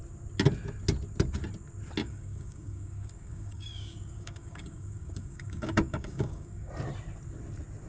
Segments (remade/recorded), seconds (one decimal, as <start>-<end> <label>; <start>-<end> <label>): 0.0-2.0 recorded; 2.0-6.7 remade; 6.7-7.9 recorded